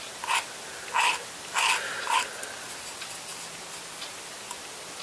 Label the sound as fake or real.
real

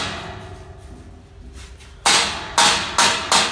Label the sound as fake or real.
real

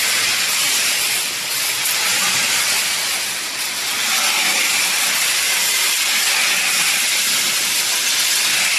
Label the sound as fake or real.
real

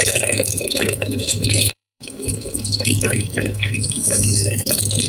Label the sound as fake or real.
fake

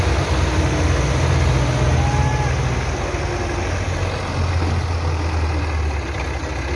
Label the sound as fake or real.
real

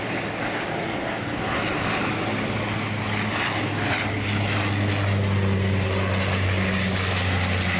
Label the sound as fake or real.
real